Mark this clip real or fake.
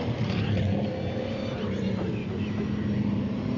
real